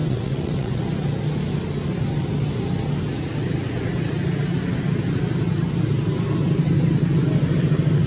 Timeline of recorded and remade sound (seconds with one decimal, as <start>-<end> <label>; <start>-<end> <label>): 0.0-0.8 remade; 0.8-8.1 recorded